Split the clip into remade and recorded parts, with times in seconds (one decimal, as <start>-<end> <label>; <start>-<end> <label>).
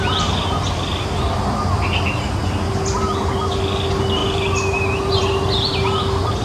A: 0.0-6.4 recorded